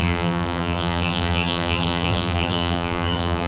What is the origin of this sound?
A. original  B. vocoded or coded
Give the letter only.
B